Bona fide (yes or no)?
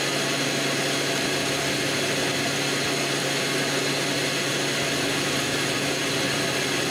yes